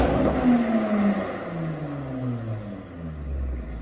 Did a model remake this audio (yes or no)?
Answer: no